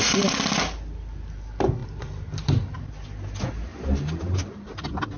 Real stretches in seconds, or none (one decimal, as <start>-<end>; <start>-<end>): 0.0-1.8; 2.8-3.7